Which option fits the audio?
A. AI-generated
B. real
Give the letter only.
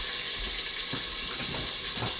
B